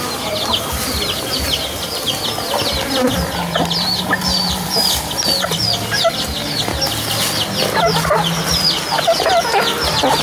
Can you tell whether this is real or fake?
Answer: real